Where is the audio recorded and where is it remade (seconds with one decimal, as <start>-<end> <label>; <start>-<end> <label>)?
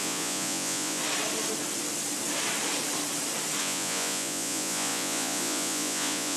0.0-1.0 remade; 1.0-3.6 recorded; 3.6-6.4 remade